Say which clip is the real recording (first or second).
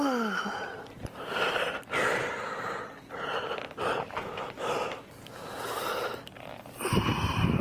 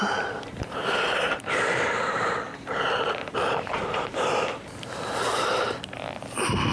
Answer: first